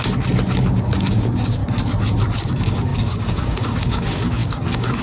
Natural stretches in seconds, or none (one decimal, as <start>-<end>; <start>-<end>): 0.0-0.7; 1.6-2.5